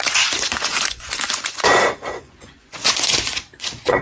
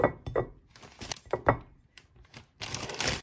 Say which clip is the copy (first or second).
first